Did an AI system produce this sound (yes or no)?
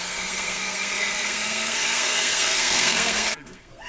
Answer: yes